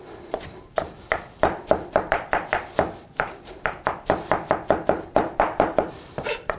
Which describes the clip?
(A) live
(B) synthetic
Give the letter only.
A